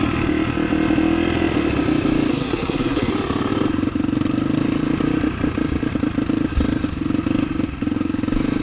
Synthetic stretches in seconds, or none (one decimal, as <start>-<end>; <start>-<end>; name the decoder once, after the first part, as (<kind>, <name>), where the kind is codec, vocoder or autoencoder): 2.3-3.1 (codec, SNAC)

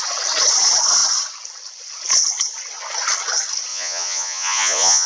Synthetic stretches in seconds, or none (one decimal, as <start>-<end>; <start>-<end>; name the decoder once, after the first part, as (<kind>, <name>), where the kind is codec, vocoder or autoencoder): 3.7-5.1 (vocoder, Vocos)

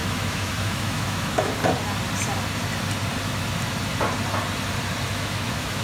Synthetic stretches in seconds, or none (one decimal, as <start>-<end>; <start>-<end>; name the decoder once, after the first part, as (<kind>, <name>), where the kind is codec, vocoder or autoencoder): 0.0-1.6 (autoencoder, DAC-VAE); 5.1-5.8

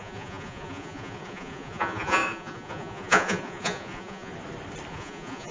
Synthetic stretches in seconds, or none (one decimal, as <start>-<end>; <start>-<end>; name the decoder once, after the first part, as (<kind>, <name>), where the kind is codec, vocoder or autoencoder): 0.0-4.3 (vocoder, Vocos); 4.9-5.5

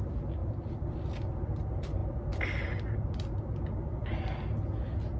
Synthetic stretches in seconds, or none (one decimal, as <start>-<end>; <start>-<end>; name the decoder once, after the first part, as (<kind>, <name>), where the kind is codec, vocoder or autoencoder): 0.4-1.4 (vocoder, BigVGAN v2)